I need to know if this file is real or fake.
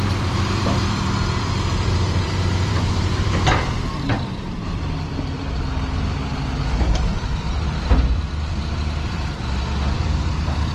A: fake